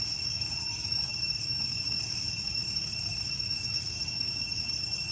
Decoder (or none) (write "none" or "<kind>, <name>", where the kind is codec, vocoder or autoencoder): autoencoder, DAC-VAE